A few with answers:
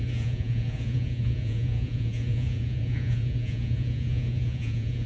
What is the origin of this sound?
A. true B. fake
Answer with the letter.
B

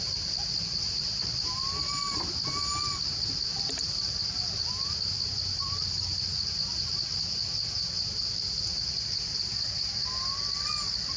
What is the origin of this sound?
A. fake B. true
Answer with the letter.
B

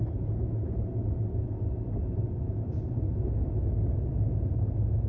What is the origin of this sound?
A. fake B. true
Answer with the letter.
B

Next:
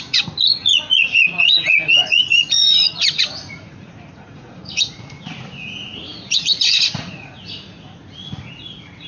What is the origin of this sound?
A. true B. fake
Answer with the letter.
B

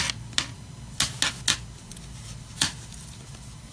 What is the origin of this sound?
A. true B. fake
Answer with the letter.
A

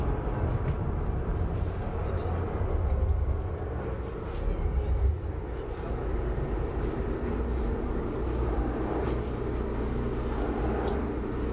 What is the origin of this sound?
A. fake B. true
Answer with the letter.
B